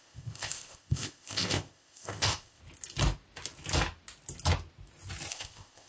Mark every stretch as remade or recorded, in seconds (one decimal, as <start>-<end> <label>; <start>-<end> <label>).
0.0-2.6 remade; 2.6-5.3 recorded; 5.3-5.9 remade